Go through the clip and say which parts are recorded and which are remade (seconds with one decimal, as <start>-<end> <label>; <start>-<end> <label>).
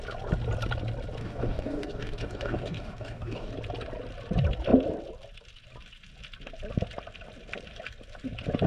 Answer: 0.0-1.2 recorded; 1.2-3.5 remade; 3.5-8.7 recorded